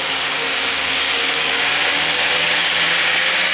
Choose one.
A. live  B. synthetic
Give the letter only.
B